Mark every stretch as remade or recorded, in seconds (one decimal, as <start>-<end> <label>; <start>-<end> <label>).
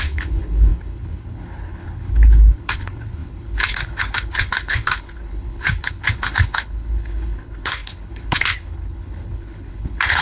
0.0-10.2 remade